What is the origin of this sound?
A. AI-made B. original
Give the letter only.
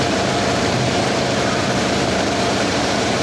A